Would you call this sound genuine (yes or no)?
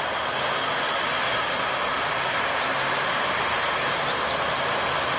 no